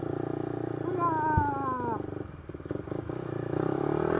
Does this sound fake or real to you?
real